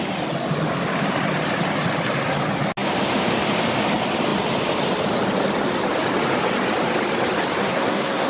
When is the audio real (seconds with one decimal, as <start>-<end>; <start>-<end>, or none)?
0.0-7.6